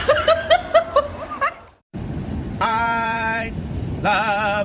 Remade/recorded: remade